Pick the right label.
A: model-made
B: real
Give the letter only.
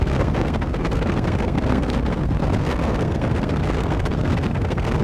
A